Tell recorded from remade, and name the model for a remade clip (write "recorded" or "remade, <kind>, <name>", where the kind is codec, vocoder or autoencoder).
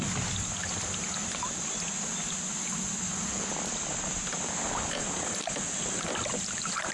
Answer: recorded